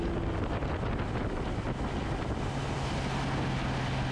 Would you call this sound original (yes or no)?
yes